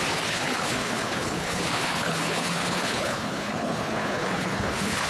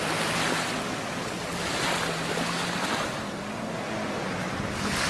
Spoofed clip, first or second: first